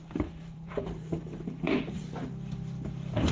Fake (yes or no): yes